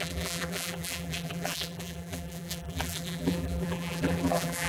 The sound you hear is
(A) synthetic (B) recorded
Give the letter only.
A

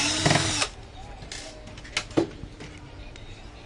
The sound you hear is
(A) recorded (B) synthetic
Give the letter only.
A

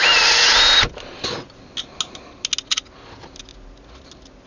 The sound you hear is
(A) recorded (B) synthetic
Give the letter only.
A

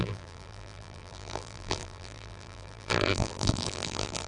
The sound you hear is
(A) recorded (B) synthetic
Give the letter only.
B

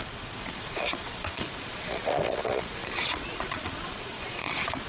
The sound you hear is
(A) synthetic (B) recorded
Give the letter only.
A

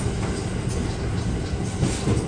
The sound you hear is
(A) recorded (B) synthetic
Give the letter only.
A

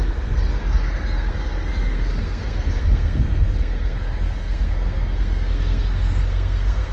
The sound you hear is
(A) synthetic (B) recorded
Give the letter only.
A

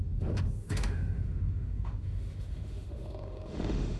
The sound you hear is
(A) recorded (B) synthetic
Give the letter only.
B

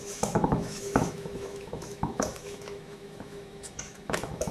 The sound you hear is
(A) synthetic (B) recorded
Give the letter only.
A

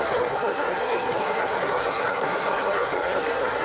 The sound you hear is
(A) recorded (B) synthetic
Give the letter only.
B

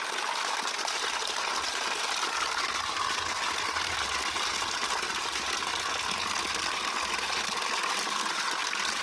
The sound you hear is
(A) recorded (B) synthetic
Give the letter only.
A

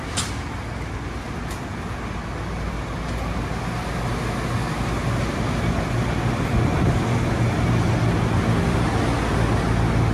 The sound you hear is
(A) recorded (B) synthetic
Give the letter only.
A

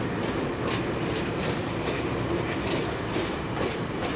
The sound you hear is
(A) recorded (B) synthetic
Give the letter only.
B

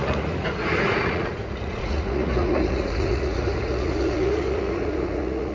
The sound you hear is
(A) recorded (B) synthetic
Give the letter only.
B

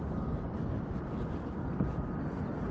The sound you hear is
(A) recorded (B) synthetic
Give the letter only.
A